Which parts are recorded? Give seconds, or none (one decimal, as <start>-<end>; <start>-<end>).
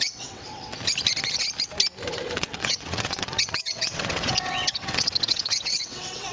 0.7-2.1